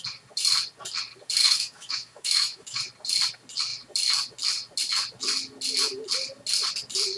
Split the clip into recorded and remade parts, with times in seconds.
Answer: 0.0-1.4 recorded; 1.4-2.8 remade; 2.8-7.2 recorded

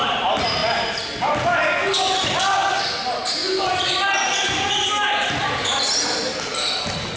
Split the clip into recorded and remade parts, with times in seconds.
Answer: 0.0-7.2 recorded

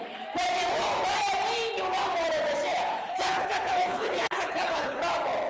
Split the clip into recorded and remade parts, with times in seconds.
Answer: 0.0-3.0 recorded; 3.0-5.0 remade; 5.0-5.5 recorded

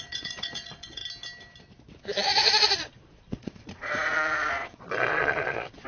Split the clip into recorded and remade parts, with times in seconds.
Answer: 0.0-1.0 remade; 1.0-2.0 recorded; 2.0-5.9 remade

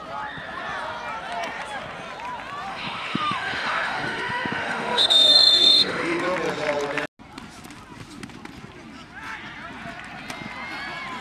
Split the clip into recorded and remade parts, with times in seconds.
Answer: 0.0-2.7 recorded; 2.7-6.2 remade; 6.2-11.2 recorded

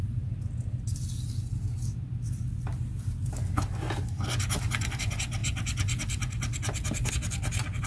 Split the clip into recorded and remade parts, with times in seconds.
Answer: 0.0-3.2 recorded; 3.2-4.0 remade; 4.0-7.9 recorded

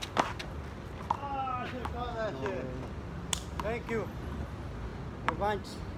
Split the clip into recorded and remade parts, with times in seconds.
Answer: 0.0-6.0 recorded